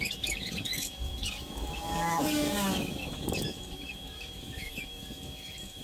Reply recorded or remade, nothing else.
remade